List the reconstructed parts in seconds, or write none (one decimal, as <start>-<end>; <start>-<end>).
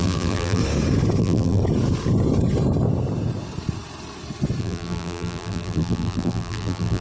0.0-0.6; 1.2-1.6; 4.6-7.0